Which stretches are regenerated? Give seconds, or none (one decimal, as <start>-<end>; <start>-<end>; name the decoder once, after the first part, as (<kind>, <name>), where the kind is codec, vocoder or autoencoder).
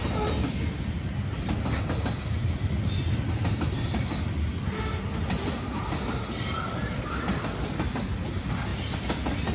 none